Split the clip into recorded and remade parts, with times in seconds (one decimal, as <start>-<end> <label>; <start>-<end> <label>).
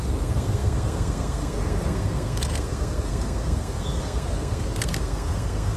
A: 0.0-5.8 remade